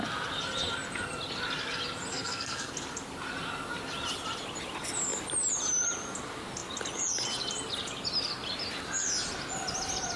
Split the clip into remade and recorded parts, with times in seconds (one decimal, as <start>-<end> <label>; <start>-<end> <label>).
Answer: 0.0-2.1 recorded; 2.1-2.7 remade; 2.7-10.2 recorded